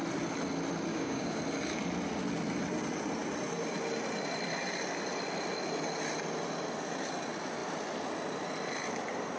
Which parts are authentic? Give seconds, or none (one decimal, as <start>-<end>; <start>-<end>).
0.0-0.9; 1.4-9.4